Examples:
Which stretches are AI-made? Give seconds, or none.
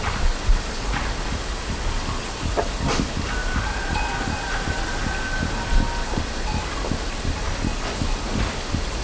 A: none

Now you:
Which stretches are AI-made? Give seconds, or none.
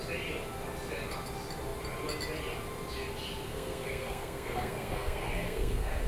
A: 3.5-6.1 (codec, SNAC)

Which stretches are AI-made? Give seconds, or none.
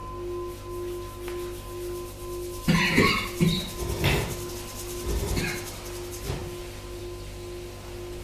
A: none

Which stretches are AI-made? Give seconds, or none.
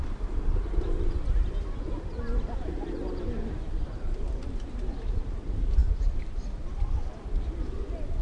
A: none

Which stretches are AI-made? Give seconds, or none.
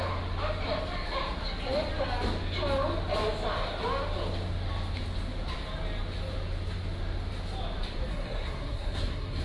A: 8.1-9.4 (codec, SNAC)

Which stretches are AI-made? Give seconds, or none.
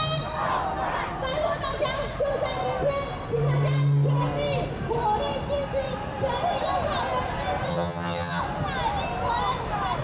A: 7.7-8.4 (vocoder, HiFi-GAN)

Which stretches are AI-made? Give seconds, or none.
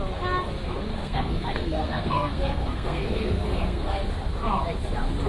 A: 0.9-4.1 (codec, SNAC)